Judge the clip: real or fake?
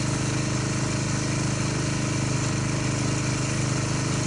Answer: real